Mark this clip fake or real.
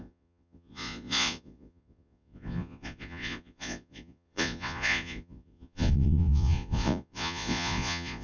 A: fake